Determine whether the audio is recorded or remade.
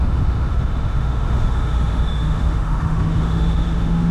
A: remade